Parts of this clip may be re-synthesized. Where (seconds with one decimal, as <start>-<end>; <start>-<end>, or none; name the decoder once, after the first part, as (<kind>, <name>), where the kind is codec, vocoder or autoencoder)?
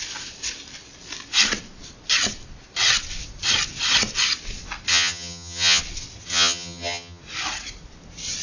4.9-5.8 (vocoder, HiFi-GAN); 6.3-7.2